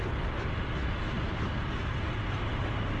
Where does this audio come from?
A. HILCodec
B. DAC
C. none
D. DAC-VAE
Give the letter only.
C